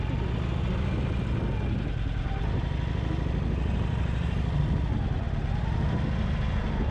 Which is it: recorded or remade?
recorded